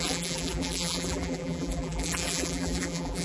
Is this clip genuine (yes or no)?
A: no